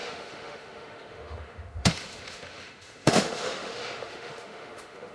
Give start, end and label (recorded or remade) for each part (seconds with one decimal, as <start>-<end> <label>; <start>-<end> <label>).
0.0-5.1 remade